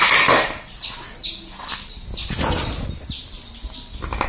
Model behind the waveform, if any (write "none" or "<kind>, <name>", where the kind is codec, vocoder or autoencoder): none